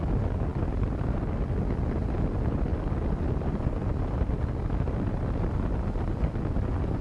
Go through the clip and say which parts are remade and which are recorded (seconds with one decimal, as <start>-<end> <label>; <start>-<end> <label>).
0.0-7.0 recorded